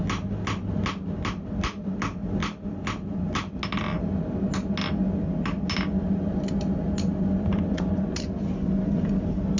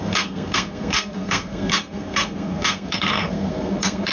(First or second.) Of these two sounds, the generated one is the second